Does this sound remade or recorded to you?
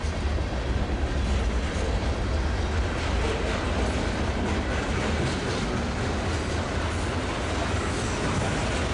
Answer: recorded